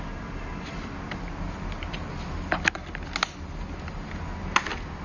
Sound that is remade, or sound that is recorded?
recorded